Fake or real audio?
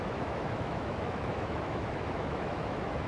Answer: fake